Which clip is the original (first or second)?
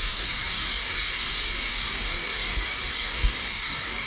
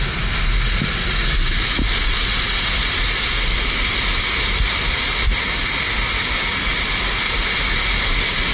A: second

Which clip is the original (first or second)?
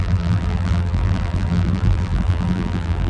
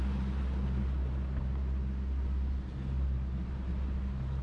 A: second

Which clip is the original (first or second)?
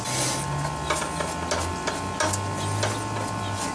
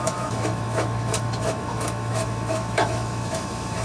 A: first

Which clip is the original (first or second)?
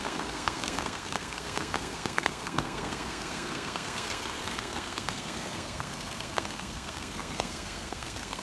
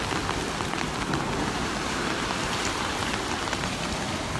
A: second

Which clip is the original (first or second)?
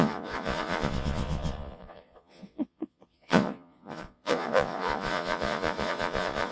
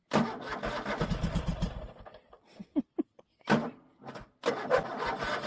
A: second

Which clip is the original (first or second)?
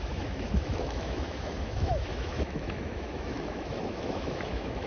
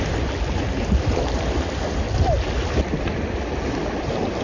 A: second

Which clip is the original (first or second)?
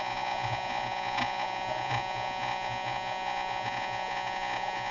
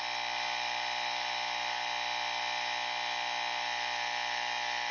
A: second